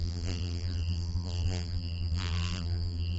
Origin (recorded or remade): remade